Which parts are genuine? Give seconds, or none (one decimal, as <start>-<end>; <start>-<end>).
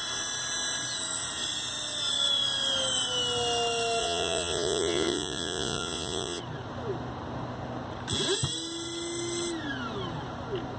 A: 0.0-4.0; 6.4-10.8